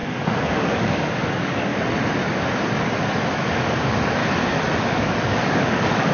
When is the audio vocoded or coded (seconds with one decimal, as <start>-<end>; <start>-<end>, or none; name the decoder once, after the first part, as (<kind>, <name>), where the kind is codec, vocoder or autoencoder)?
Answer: 0.0-1.7 (codec, DAC); 3.3-4.2; 4.8-6.1